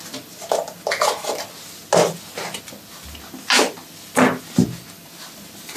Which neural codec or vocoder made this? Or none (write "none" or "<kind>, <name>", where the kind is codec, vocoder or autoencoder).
none